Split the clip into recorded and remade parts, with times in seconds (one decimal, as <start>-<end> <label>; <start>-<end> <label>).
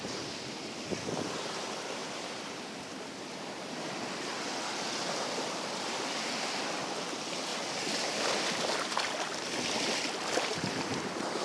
0.0-11.4 recorded